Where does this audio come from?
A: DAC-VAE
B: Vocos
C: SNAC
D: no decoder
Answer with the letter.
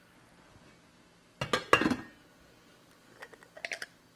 D